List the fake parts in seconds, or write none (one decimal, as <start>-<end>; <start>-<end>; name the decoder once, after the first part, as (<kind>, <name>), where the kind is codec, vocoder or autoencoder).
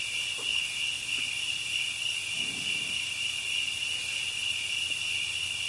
none